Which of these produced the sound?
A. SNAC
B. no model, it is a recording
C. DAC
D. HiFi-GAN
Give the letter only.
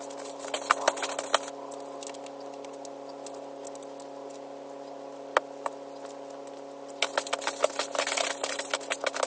B